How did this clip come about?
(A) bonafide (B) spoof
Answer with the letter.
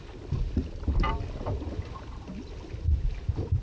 B